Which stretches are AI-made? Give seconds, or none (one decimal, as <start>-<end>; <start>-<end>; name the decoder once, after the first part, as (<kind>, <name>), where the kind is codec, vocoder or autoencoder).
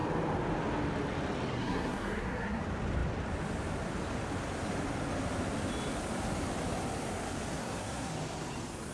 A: 1.5-2.6 (codec, SNAC); 7.6-8.1